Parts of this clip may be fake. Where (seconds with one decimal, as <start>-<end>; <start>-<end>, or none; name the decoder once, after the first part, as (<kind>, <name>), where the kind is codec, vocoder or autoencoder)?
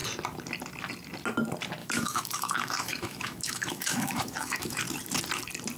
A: 1.8-4.8 (autoencoder, DAC-VAE)